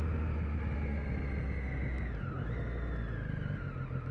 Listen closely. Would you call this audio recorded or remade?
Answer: recorded